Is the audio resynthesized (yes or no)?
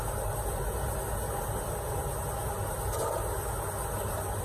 no